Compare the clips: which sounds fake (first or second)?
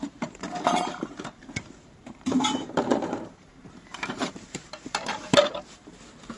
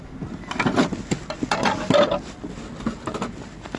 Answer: first